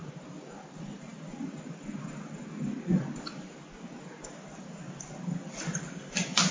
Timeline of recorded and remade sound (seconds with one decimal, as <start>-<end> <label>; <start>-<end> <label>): 0.0-6.5 recorded

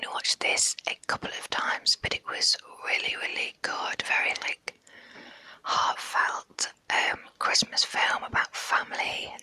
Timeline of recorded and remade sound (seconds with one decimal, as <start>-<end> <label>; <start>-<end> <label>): 0.0-9.4 recorded

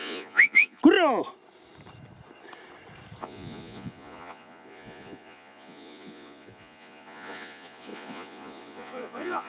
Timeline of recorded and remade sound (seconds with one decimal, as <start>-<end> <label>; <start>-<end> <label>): 0.0-0.8 remade; 0.8-3.2 recorded; 3.2-9.5 remade

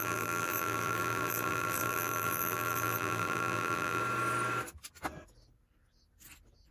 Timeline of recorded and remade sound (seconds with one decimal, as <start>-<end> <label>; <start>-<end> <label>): 0.0-4.0 remade; 4.0-6.7 recorded

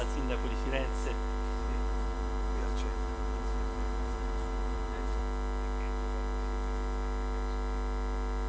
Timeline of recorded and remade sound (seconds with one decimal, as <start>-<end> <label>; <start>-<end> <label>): 0.0-1.6 recorded; 1.6-5.2 remade; 5.2-8.5 recorded

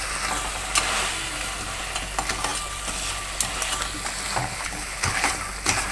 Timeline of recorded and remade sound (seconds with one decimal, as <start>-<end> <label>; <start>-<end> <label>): 0.0-4.4 recorded; 4.4-5.3 remade; 5.3-5.9 recorded

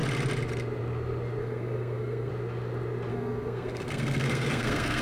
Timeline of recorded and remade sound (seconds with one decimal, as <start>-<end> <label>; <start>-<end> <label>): 0.0-1.4 recorded; 1.4-2.3 remade; 2.3-3.1 recorded; 3.1-5.0 remade

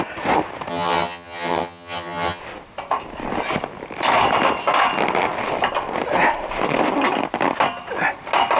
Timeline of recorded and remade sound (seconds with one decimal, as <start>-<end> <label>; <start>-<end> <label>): 0.0-0.7 recorded; 0.7-2.4 remade; 2.4-8.6 recorded